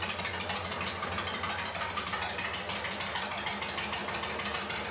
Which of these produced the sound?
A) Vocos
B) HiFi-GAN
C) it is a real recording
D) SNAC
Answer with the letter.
C